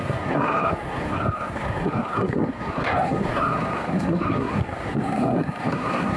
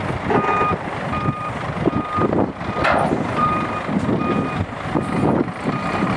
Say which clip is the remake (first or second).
first